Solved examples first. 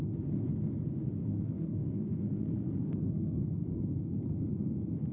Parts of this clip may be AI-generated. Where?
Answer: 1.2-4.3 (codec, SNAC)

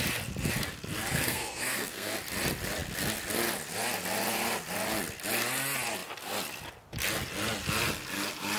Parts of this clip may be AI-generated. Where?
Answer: 1.1-2.1 (codec, SNAC)

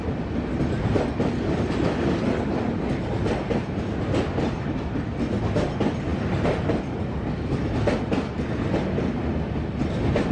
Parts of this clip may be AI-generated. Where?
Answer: none